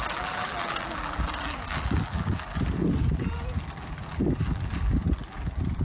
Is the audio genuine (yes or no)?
no